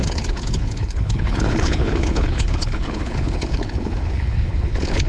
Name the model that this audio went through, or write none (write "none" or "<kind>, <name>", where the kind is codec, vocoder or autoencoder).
codec, HILCodec